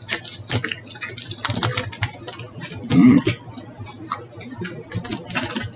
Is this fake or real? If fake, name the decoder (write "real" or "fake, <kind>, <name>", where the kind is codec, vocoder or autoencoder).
real